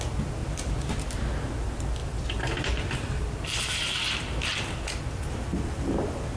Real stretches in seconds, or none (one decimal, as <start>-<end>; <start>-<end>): 0.0-0.4; 1.1-2.0; 5.0-6.4